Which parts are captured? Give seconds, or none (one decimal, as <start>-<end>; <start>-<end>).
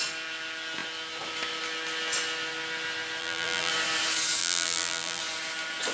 0.0-3.2; 3.7-4.4; 5.2-5.9